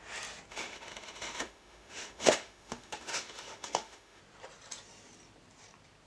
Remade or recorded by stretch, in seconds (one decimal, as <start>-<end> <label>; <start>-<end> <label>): 0.0-0.5 recorded; 0.5-4.2 remade; 4.2-6.1 recorded